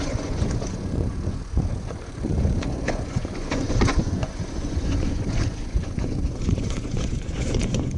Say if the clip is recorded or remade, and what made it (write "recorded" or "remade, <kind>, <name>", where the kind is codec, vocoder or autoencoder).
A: remade, vocoder, Vocos